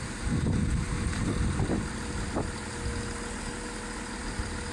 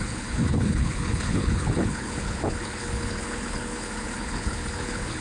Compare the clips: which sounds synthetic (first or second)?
second